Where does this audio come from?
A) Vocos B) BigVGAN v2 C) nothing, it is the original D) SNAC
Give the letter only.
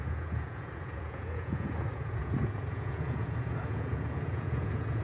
A